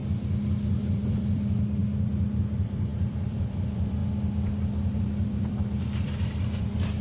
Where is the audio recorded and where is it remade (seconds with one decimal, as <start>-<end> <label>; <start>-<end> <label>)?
0.0-0.8 recorded; 0.8-4.0 remade; 4.0-4.9 recorded; 4.9-7.0 remade